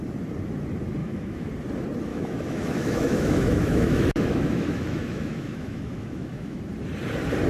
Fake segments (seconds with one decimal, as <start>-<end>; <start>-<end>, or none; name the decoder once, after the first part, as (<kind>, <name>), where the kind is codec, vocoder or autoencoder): 1.0-1.5 (autoencoder, DAC-VAE); 2.1-6.6